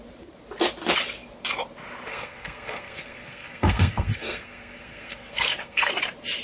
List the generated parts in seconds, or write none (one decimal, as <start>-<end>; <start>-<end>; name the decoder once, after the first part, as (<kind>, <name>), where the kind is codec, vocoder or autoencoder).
2.1-5.9 (codec, SNAC)